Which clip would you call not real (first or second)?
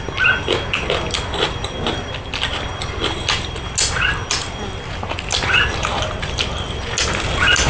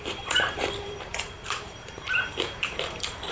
second